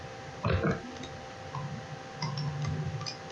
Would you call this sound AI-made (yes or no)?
no